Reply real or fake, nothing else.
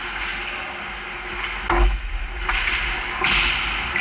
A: real